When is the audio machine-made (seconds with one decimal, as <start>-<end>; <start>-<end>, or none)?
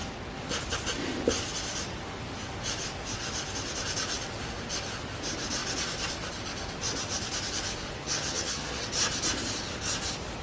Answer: 8.0-8.8